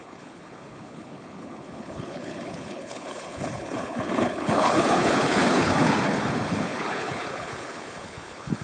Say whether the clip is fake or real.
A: fake